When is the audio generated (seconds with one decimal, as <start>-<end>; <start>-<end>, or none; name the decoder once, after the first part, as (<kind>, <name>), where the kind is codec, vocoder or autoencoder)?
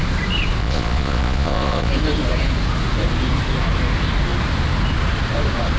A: 0.6-1.9 (vocoder, Vocos)